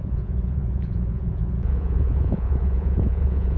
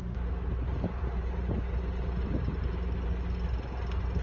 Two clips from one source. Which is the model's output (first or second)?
first